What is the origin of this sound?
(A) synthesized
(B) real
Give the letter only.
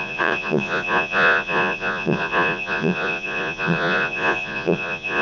A